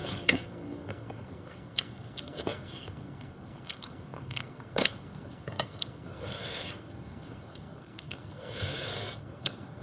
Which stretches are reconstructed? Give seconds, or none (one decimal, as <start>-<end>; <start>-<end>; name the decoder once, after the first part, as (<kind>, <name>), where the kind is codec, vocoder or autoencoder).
0.0-9.8 (codec, SNAC)